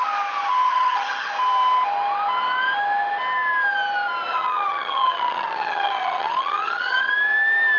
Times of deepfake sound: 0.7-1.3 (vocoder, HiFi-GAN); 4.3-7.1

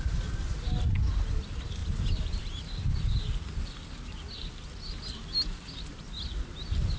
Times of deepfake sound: 1.8-2.4 (vocoder, BigVGAN v2)

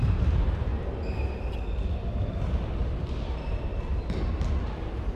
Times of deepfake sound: 0.0-0.7 (vocoder, BigVGAN v2); 3.3-3.7; 4.5-5.2

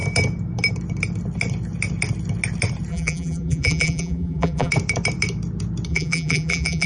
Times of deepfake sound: 2.9-4.7 (vocoder, BigVGAN v2); 5.9-6.9

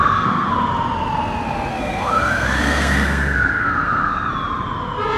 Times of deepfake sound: 0.0-0.5 (codec, SNAC); 1.7-4.3